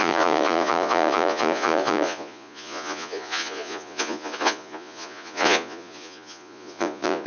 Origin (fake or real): fake